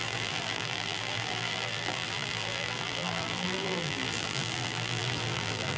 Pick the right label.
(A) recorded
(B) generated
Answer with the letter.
B